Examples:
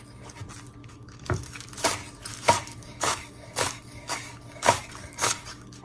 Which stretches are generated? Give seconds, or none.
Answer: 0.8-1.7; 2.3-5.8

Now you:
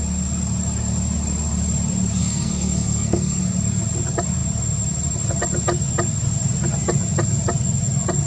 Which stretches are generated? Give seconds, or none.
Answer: 2.2-3.4